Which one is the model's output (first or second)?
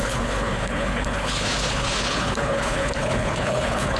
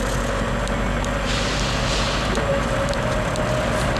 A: first